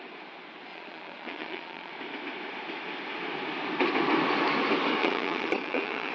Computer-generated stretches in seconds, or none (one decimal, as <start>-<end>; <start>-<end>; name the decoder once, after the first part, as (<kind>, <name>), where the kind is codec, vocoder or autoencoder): 0.7-1.9 (vocoder, Vocos); 5.0-6.1